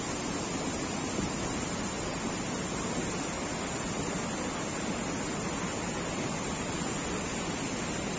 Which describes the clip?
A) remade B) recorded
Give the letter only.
B